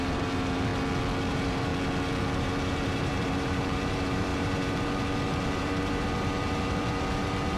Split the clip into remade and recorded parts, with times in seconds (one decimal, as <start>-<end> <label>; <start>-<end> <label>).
0.0-0.7 remade; 0.7-1.2 recorded; 1.2-1.7 remade; 1.7-2.2 recorded; 2.2-7.6 remade